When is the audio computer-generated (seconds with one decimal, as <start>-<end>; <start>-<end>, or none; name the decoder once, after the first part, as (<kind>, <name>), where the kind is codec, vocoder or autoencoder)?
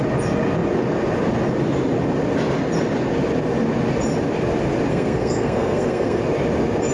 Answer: 4.9-6.2 (codec, SNAC)